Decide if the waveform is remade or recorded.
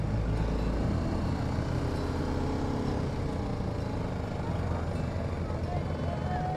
recorded